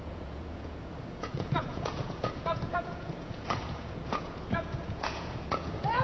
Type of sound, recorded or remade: remade